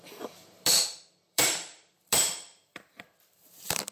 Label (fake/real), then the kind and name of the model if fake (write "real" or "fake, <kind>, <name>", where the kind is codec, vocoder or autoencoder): fake, vocoder, BigVGAN v2